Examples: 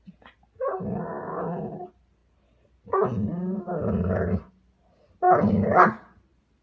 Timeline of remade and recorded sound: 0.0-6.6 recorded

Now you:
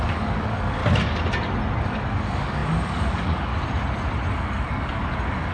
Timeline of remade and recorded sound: 0.0-0.8 remade; 0.8-1.8 recorded; 1.8-3.5 remade; 3.5-4.3 recorded; 4.3-5.5 remade